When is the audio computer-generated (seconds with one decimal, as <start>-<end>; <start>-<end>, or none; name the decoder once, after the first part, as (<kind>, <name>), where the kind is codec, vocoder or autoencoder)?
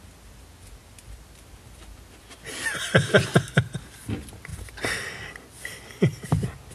none